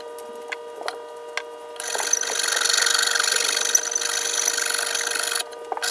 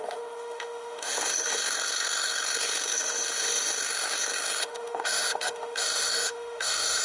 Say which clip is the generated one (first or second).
second